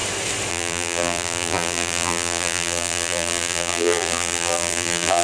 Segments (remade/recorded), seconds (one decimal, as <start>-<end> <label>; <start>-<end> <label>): 0.0-0.5 recorded; 0.5-5.2 remade